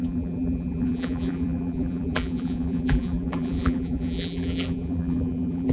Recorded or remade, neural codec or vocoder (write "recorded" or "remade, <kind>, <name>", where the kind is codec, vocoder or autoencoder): remade, vocoder, BigVGAN v2